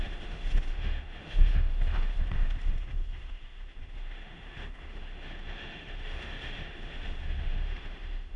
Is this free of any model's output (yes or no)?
no